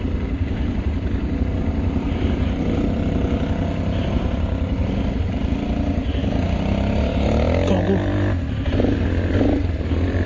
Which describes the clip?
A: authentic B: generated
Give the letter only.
A